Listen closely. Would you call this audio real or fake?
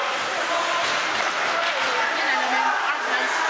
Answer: real